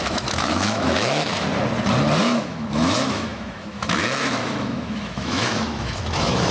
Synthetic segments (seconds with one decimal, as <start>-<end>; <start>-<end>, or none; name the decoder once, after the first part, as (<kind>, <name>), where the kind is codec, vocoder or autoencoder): 0.0-1.5 (autoencoder, DAC-VAE); 2.2-6.5

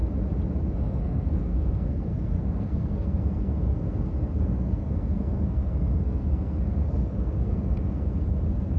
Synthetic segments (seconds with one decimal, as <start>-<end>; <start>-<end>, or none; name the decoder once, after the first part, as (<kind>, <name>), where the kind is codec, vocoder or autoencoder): 0.6-8.8 (codec, SNAC)

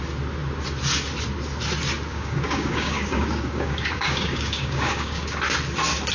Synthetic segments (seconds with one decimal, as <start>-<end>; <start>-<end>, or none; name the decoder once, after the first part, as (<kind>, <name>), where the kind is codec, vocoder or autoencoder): 2.1-5.4 (codec, DAC)